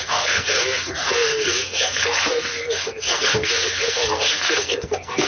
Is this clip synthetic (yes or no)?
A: yes